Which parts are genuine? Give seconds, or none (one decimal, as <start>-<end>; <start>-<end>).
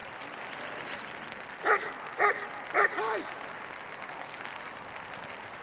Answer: 0.0-5.6